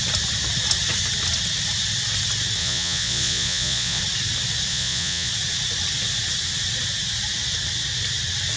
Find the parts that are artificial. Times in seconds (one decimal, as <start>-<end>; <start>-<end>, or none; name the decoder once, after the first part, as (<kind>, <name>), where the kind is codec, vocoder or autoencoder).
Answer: 2.6-4.0 (vocoder, Vocos); 4.7-5.3